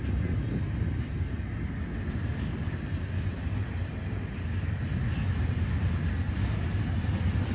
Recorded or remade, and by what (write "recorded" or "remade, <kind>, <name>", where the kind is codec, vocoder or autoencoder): recorded